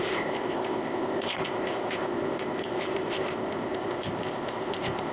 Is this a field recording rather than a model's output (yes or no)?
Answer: no